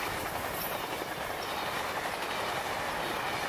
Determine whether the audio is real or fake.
real